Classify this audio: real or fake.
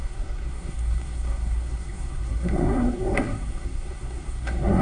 fake